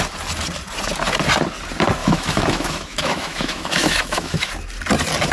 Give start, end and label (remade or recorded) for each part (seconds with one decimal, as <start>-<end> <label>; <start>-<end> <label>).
0.0-2.0 recorded; 2.0-4.5 remade; 4.5-5.3 recorded

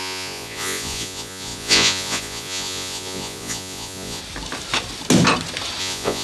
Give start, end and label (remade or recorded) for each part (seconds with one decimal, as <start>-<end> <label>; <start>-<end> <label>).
0.0-4.2 remade; 4.2-5.8 recorded; 5.8-6.2 remade

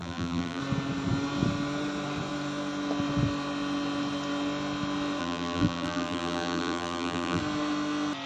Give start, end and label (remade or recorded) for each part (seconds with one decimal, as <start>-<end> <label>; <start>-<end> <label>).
0.0-0.6 remade; 0.6-5.2 recorded; 5.2-7.4 remade; 7.4-8.3 recorded

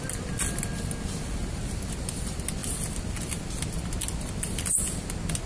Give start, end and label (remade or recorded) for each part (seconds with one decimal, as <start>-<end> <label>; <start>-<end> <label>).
0.0-5.5 recorded

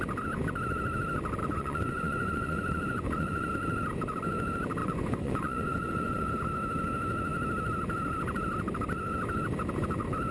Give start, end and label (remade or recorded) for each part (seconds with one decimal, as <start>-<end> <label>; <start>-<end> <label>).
0.0-1.4 recorded; 1.4-3.5 remade; 3.5-4.8 recorded; 4.8-6.3 remade; 6.3-10.3 recorded